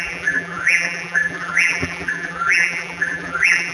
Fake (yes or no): yes